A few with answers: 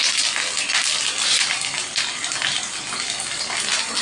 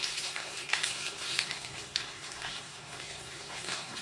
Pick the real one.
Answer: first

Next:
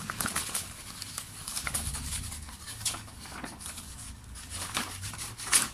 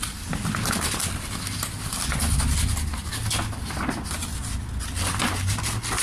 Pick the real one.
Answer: second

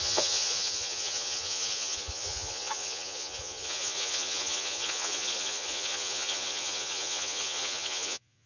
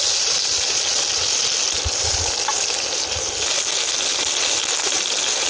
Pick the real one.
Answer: second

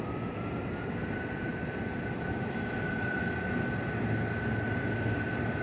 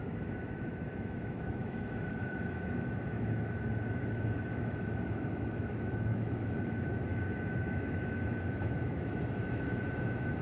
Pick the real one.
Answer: first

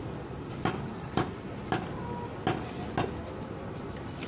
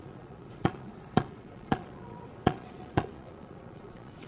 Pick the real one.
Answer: first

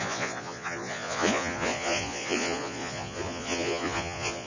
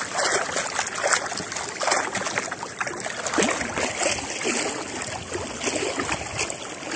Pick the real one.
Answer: second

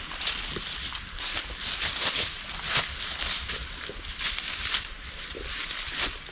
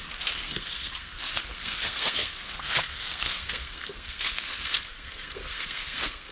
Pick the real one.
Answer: first